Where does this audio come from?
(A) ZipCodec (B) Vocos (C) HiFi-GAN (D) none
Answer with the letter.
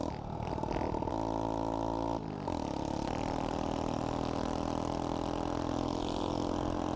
D